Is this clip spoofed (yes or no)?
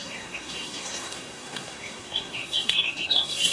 yes